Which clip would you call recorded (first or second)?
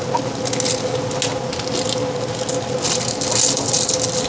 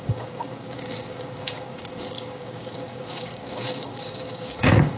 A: first